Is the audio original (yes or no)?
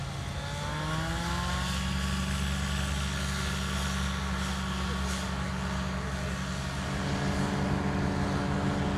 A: yes